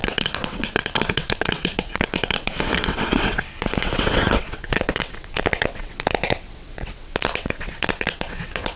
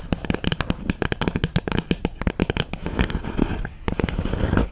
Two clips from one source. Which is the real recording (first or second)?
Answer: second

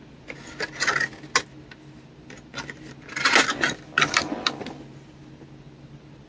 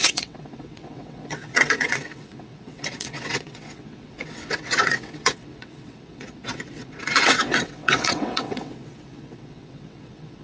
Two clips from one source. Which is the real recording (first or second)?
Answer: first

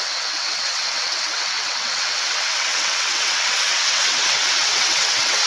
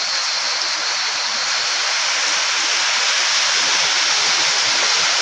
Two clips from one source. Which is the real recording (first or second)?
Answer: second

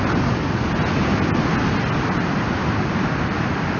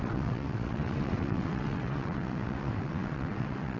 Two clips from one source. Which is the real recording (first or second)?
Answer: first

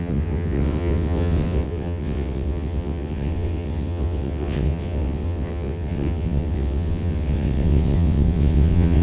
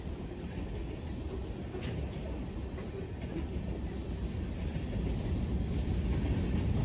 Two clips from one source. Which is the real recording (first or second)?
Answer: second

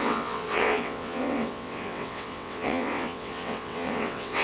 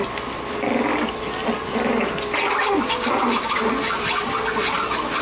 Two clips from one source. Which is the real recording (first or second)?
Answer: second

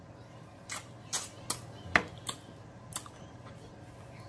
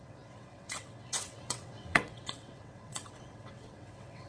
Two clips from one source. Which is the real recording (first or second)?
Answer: first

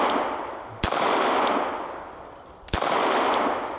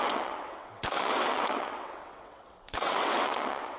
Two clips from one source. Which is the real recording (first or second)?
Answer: first